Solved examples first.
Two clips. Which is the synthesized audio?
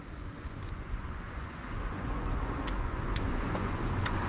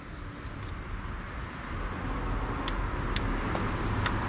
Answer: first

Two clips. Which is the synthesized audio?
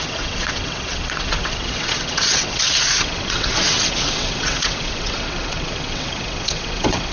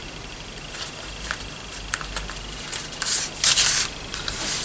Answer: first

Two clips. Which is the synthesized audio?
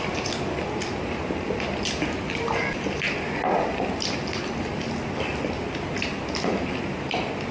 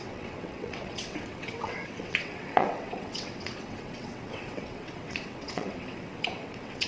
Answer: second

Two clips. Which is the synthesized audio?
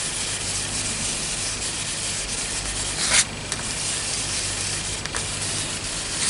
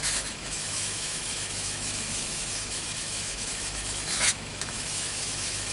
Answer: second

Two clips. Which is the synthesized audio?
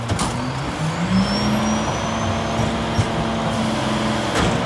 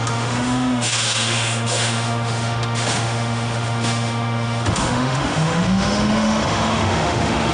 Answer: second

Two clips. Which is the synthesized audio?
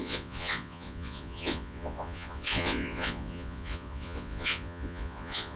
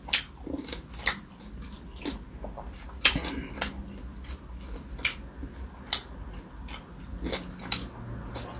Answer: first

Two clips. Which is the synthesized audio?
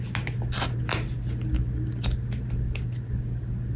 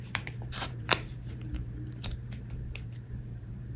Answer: second